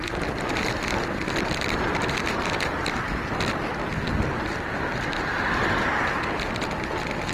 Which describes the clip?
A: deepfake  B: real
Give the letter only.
B